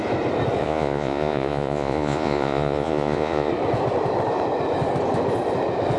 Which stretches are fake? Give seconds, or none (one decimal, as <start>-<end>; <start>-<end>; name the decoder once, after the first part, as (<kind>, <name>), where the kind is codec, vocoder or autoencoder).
0.6-3.5 (vocoder, Vocos)